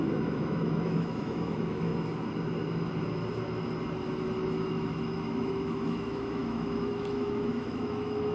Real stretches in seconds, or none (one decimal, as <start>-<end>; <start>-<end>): 1.9-4.7